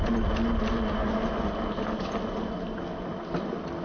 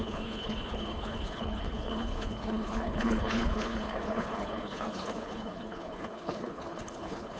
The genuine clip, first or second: first